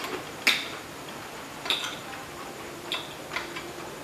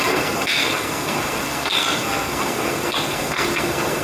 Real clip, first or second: first